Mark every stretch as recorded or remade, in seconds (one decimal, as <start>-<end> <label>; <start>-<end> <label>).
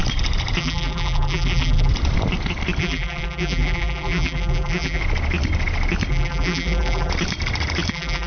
0.0-0.6 recorded; 0.6-1.9 remade; 1.9-2.8 recorded; 2.8-5.0 remade; 5.0-6.1 recorded; 6.1-7.1 remade; 7.1-7.9 recorded; 7.9-8.3 remade